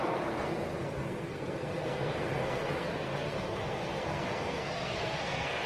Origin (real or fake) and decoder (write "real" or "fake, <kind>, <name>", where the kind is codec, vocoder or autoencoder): fake, codec, SNAC